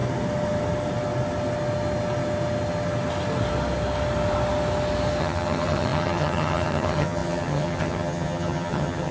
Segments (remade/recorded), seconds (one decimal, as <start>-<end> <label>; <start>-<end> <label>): 0.0-5.2 recorded; 5.2-9.1 remade